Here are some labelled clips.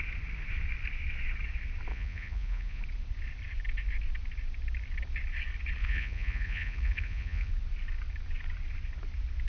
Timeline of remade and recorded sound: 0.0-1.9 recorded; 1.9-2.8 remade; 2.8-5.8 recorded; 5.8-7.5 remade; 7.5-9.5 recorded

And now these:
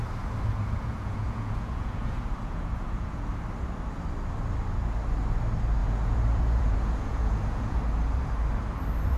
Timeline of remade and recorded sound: 0.0-0.5 recorded; 0.5-3.3 remade; 3.3-5.8 recorded; 5.8-7.8 remade; 7.8-9.2 recorded

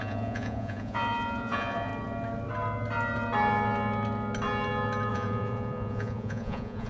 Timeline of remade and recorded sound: 0.0-1.9 remade; 1.9-5.1 recorded; 5.1-6.9 remade

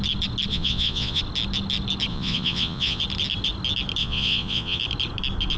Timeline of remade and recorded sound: 0.0-0.5 recorded; 0.5-1.2 remade; 1.2-2.1 recorded; 2.1-3.0 remade; 3.0-4.0 recorded; 4.0-4.8 remade; 4.8-5.6 recorded